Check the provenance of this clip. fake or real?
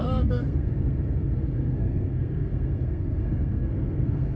fake